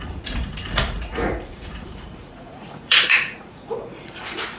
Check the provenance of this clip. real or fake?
fake